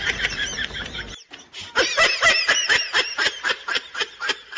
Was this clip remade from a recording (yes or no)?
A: yes